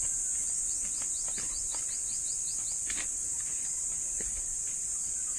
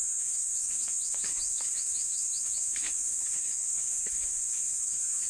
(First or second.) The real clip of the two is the first